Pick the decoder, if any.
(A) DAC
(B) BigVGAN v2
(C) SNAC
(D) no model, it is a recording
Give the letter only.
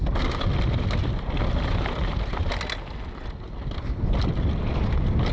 D